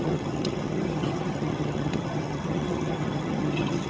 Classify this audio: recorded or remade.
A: remade